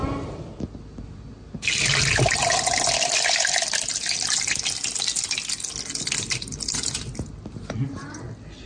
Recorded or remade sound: recorded